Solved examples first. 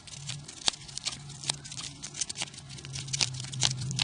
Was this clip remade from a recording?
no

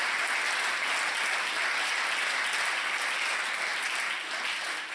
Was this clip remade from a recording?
no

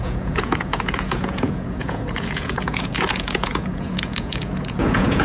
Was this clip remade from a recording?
yes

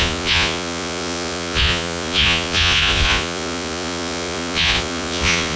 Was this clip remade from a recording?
yes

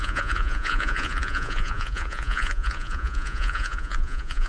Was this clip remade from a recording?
yes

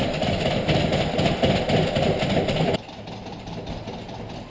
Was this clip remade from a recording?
no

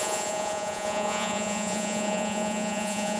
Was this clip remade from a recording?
yes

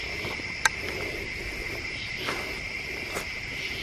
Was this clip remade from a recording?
no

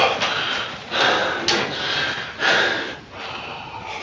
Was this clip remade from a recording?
no